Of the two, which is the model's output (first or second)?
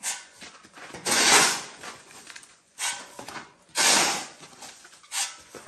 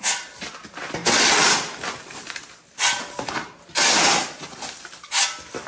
first